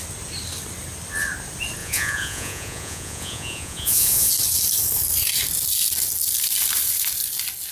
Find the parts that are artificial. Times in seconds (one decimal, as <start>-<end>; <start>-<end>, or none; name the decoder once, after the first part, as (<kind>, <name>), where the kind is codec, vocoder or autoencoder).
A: 1.8-4.3 (vocoder, Vocos)